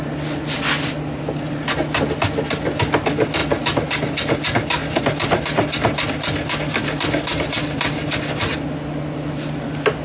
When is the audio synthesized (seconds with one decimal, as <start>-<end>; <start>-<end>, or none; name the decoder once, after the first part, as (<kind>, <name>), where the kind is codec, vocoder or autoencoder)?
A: none